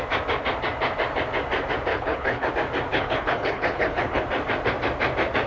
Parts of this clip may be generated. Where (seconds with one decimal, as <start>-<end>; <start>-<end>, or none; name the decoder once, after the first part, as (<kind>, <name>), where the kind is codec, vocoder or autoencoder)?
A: 1.9-2.5 (codec, HILCodec); 2.9-4.2